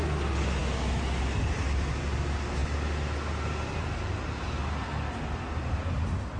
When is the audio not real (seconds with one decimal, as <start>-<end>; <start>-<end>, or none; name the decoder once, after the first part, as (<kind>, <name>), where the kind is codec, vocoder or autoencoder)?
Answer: none